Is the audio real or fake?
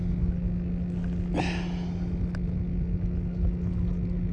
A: real